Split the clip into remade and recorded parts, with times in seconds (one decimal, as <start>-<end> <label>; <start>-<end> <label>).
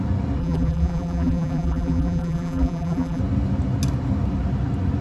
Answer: 0.0-0.4 recorded; 0.4-3.2 remade; 3.2-5.0 recorded